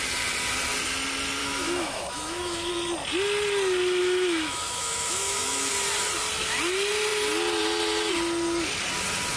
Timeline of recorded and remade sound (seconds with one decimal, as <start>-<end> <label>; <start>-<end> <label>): 0.0-1.4 recorded; 1.4-2.7 remade; 2.7-4.0 recorded; 4.0-5.7 remade; 5.7-9.4 recorded